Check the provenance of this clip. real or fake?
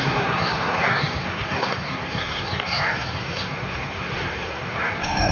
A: fake